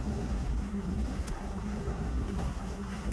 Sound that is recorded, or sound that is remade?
remade